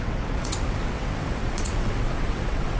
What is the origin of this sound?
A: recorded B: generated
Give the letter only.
B